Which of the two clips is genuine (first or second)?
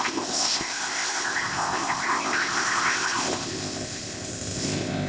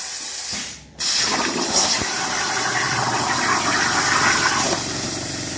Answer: second